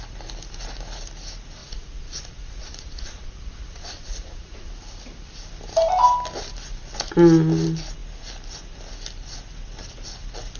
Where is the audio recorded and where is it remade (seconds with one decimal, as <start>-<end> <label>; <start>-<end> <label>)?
0.0-1.6 recorded; 1.6-4.7 remade; 4.7-10.6 recorded